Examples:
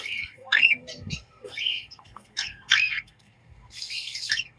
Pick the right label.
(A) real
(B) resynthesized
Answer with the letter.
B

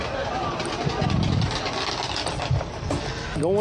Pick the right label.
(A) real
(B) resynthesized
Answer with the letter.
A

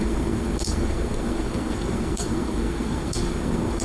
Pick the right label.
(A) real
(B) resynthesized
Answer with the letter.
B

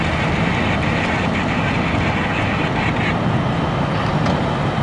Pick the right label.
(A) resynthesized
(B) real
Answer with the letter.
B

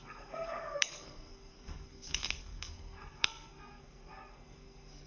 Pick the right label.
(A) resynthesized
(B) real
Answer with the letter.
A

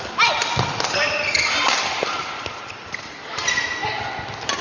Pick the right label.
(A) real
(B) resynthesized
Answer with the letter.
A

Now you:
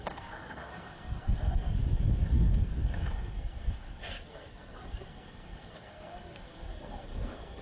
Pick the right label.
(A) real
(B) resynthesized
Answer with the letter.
B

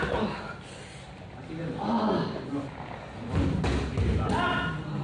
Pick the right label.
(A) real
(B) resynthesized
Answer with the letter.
A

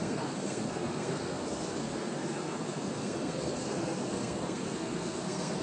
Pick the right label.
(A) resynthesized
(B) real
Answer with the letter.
A